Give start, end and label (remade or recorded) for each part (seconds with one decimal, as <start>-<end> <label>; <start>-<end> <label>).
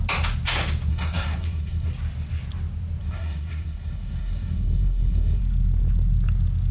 0.0-0.9 recorded; 0.9-1.9 remade; 1.9-3.0 recorded; 3.0-5.4 remade; 5.4-6.7 recorded